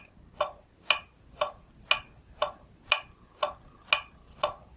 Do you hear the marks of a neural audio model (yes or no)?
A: no